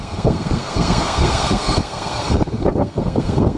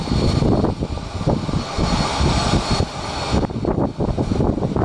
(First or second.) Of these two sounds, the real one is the second